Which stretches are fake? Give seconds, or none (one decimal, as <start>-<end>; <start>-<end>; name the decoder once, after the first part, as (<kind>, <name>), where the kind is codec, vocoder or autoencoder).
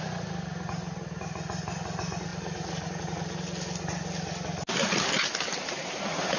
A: none